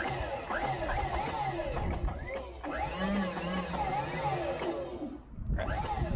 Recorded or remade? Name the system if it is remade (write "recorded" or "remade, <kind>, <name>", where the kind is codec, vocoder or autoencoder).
recorded